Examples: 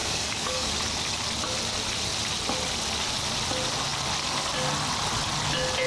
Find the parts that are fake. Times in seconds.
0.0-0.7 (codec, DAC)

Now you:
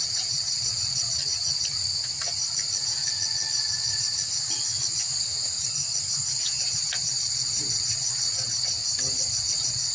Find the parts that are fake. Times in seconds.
0.0-1.2 (vocoder, WaveNeXt); 5.2-5.8; 6.6-8.8; 9.3-9.9

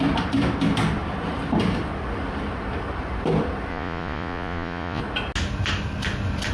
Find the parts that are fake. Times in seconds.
3.7-5.0 (vocoder, Vocos)

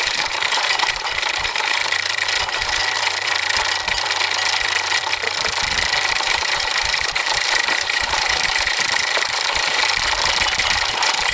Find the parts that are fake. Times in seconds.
0.0-1.8 (vocoder, BigVGAN v2); 2.4-2.8; 6.1-9.8; 10.9-11.3

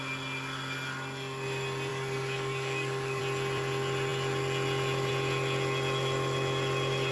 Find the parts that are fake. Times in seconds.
1.9-3.2 (codec, DAC)